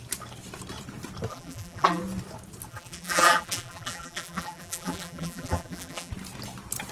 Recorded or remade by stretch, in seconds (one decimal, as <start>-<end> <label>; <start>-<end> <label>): 0.0-1.3 recorded; 1.3-2.0 remade; 2.0-2.7 recorded; 2.7-6.1 remade; 6.1-6.9 recorded